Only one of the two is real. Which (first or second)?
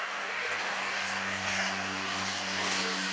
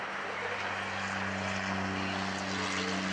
second